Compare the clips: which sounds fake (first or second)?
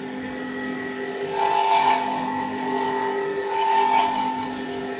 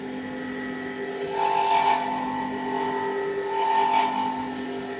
first